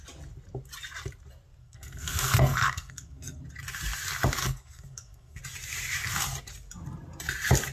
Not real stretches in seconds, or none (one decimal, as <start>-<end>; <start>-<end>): 1.6-3.4; 4.4-5.4